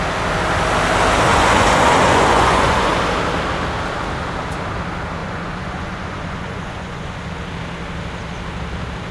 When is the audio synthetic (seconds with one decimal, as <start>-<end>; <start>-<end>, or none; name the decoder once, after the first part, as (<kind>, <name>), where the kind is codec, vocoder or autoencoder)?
1.3-3.0 (vocoder, Vocos); 5.2-7.3